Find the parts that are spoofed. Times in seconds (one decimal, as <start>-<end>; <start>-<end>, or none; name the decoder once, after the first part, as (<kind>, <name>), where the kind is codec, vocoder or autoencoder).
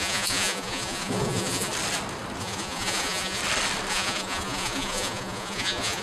0.0-1.7 (vocoder, Vocos); 2.4-3.4; 3.9-6.0